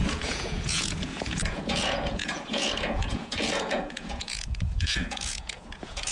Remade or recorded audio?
remade